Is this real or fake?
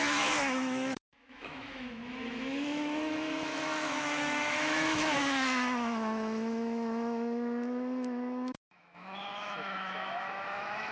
fake